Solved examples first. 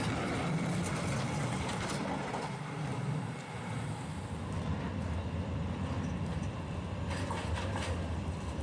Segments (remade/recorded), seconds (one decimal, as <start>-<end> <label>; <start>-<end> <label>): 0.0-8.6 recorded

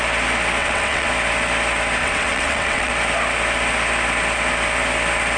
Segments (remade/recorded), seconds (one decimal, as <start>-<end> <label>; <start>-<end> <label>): 0.0-0.6 recorded; 0.6-1.1 remade; 1.1-2.0 recorded; 2.0-2.9 remade; 2.9-5.4 recorded

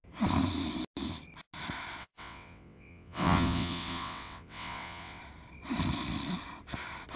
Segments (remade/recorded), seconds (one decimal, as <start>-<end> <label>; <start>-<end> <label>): 0.0-2.0 recorded; 2.0-5.2 remade; 5.2-7.2 recorded

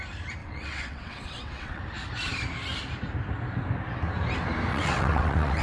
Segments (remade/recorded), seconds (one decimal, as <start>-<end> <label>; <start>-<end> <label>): 0.0-0.4 recorded; 0.4-1.8 remade; 1.8-4.7 recorded; 4.7-5.6 remade

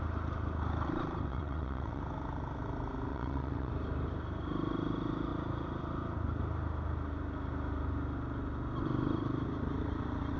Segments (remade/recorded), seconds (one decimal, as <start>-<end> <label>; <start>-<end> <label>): 0.0-1.3 recorded; 1.3-2.0 remade; 2.0-3.1 recorded; 3.1-3.7 remade; 3.7-10.4 recorded

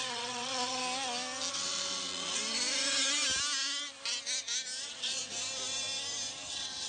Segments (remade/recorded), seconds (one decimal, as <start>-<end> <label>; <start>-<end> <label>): 0.0-0.8 remade; 0.8-1.5 recorded; 1.5-2.4 remade; 2.4-4.8 recorded; 4.8-5.2 remade; 5.2-6.5 recorded; 6.5-6.9 remade

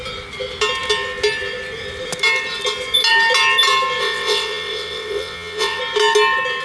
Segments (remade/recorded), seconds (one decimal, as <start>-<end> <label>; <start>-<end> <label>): 0.0-4.0 recorded; 4.0-5.8 remade; 5.8-6.6 recorded